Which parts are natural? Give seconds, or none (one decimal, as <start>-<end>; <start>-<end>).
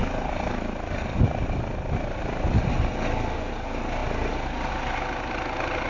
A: 0.0-5.9